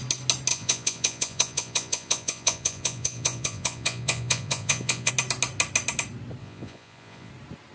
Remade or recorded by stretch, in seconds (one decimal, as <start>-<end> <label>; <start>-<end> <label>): 0.0-0.5 recorded; 0.5-5.1 remade; 5.1-6.4 recorded; 6.4-7.3 remade; 7.3-7.7 recorded